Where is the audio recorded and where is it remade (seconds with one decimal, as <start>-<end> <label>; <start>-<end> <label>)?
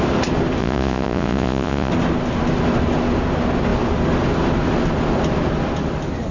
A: 0.0-0.6 recorded; 0.6-1.9 remade; 1.9-6.3 recorded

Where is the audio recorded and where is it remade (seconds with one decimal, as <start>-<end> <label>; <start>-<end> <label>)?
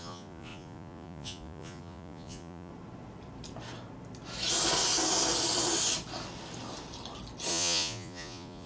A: 0.0-2.7 remade; 2.7-7.5 recorded; 7.5-8.7 remade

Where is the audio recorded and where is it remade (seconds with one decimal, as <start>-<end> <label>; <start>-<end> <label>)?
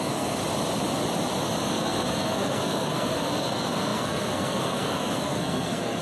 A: 0.0-0.4 remade; 0.4-1.7 recorded; 1.7-6.0 remade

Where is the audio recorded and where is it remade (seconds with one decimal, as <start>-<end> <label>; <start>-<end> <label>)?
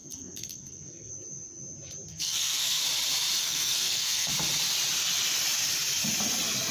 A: 0.0-1.1 remade; 1.1-2.1 recorded; 2.1-2.8 remade; 2.8-3.4 recorded; 3.4-4.3 remade; 4.3-6.7 recorded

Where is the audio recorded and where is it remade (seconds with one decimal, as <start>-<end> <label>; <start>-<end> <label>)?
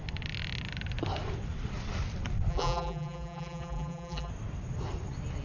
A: 0.0-2.5 recorded; 2.5-4.3 remade; 4.3-5.4 recorded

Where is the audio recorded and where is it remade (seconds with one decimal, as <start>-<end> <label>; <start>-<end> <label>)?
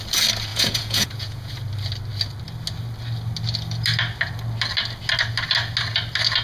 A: 0.0-0.5 recorded; 0.5-1.5 remade; 1.5-6.4 recorded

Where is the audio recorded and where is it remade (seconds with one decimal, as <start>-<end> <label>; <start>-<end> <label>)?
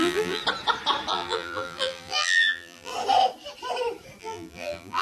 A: 0.0-0.4 remade; 0.4-1.1 recorded; 1.1-2.9 remade; 2.9-4.2 recorded; 4.2-5.0 remade